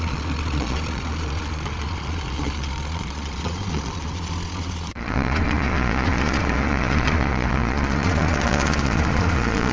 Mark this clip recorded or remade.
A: remade